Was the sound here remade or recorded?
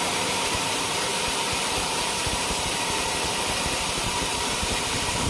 remade